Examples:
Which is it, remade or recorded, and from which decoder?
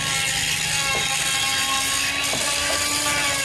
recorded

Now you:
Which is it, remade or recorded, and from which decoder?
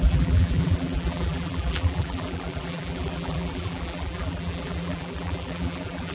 remade, vocoder, BigVGAN v2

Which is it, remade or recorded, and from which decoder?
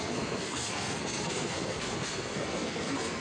remade, codec, SNAC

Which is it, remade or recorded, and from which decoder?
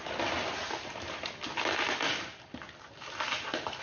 recorded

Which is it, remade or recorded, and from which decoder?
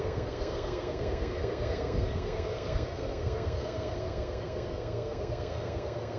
remade, codec, SNAC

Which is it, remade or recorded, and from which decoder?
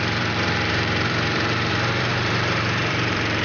remade, vocoder, BigVGAN v2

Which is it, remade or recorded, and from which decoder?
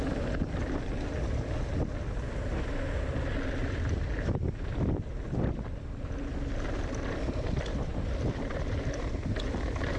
recorded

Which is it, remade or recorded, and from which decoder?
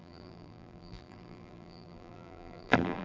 remade, vocoder, BigVGAN v2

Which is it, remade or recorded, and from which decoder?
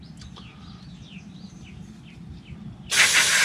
recorded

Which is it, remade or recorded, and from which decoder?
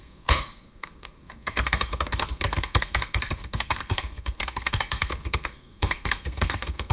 remade, codec, SNAC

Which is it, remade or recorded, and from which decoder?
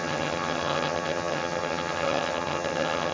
remade, vocoder, HiFi-GAN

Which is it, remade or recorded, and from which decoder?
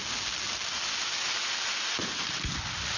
recorded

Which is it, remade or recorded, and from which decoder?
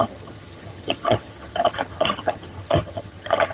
remade, vocoder, HiFi-GAN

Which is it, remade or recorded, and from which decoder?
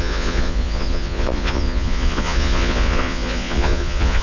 remade, vocoder, Vocos